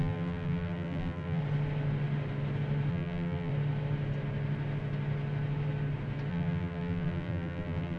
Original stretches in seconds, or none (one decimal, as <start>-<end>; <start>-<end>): 1.4-2.9; 3.5-6.3